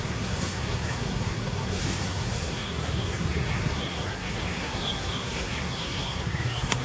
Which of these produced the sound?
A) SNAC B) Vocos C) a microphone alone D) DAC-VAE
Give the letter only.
A